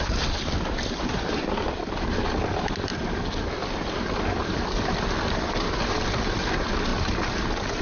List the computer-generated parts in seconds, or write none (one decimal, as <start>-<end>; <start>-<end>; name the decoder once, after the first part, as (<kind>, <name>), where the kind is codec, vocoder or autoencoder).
none